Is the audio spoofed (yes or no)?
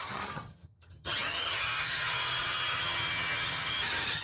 yes